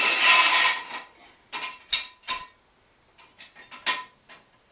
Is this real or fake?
real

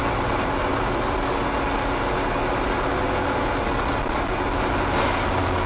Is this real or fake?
real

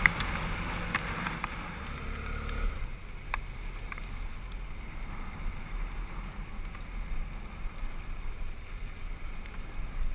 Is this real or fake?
real